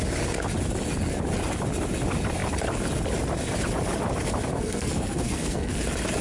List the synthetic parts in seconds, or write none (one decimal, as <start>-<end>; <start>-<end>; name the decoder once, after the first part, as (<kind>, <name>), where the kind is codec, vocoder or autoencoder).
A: 4.5-5.8 (codec, SNAC)